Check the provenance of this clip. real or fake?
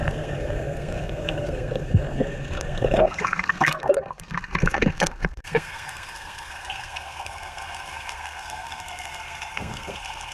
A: fake